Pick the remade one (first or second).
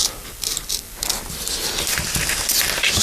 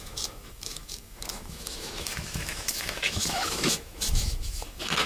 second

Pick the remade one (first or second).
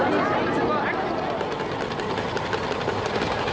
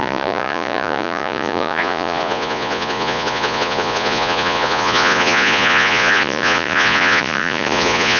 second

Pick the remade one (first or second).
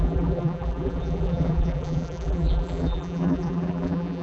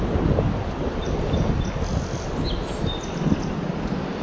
first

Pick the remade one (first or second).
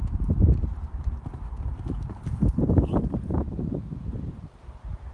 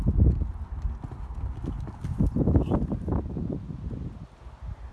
first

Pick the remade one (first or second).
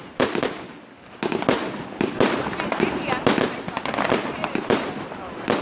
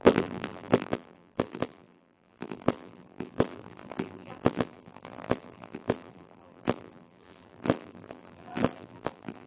second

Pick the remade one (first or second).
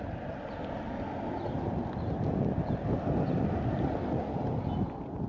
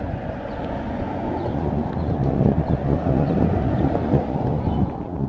second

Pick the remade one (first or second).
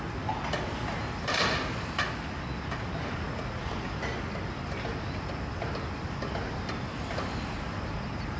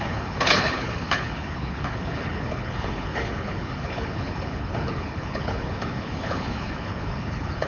second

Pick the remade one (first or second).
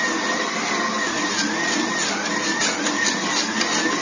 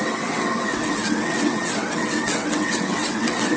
second